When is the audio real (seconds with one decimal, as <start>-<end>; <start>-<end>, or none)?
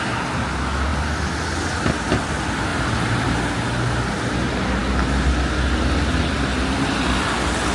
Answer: 0.0-2.7; 3.5-7.7